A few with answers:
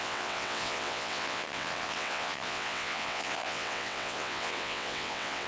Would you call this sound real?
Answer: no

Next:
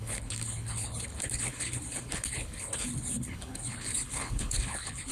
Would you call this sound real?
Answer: no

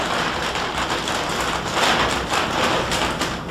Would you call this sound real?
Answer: yes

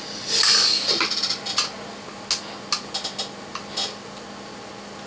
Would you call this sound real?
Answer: yes